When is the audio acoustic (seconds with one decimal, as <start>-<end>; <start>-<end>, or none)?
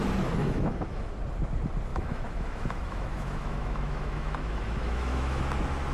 0.0-0.4; 1.1-1.9; 5.4-5.9